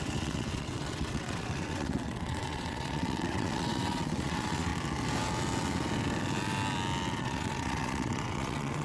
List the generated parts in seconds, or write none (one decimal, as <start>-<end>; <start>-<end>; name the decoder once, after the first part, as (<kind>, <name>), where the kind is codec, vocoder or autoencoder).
0.0-4.7 (vocoder, WaveNeXt); 7.2-8.8